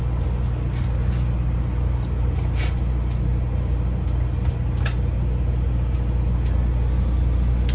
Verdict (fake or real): real